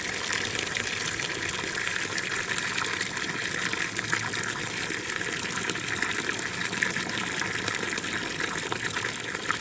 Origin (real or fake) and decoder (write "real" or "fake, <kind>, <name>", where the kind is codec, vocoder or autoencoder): real